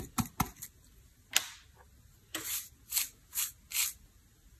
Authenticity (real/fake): real